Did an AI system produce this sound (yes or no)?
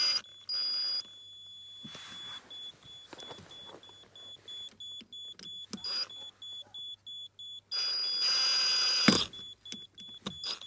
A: no